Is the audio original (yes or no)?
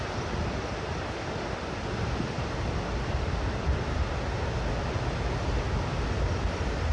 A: yes